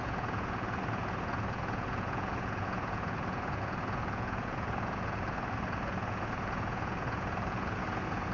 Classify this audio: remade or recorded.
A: remade